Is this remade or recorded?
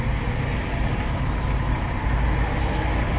recorded